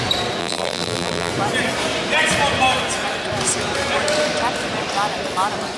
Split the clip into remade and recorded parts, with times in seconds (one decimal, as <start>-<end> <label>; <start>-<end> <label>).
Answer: 0.0-0.4 recorded; 0.4-1.3 remade; 1.3-5.8 recorded